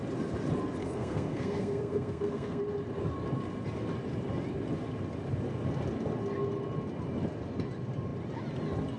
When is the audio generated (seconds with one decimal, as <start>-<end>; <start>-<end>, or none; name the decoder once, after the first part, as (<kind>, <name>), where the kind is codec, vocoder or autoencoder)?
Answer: 0.8-2.6 (codec, SNAC)